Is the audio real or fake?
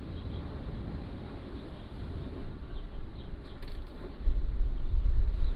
fake